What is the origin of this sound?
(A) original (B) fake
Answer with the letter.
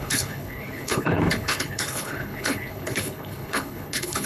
B